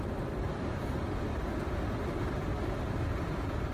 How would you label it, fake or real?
real